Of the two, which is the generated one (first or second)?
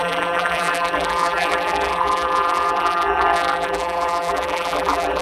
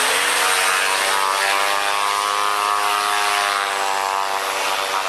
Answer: first